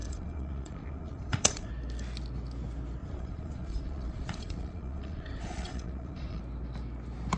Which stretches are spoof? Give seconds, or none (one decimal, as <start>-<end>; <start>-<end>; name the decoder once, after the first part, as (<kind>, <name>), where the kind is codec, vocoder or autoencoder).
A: 0.0-1.7 (vocoder, Vocos); 3.0-6.4